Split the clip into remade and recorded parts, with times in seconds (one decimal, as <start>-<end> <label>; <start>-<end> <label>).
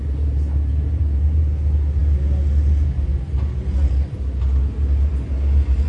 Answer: 0.0-5.9 recorded